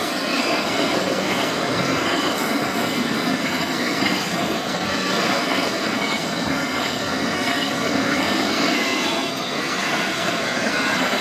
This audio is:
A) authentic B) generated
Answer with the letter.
B